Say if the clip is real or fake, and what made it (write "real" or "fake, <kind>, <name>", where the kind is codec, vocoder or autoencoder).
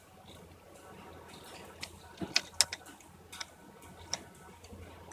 real